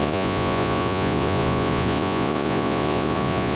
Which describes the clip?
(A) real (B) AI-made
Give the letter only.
B